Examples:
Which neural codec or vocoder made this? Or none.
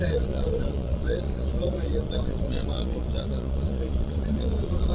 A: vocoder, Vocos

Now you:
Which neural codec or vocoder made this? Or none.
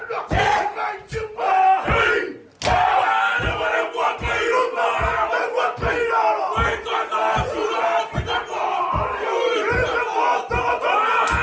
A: none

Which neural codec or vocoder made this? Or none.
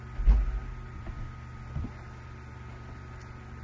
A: none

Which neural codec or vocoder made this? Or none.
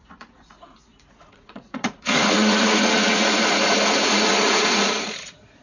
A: vocoder, Vocos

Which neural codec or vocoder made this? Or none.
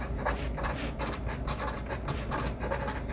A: none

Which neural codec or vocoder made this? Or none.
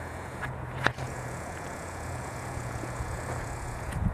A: vocoder, Vocos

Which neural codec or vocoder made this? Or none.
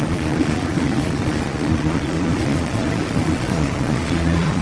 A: vocoder, Vocos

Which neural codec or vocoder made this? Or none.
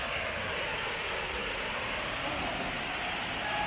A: none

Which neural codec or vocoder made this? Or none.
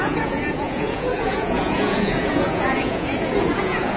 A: vocoder, Vocos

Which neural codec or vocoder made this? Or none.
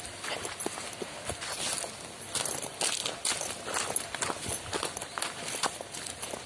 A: none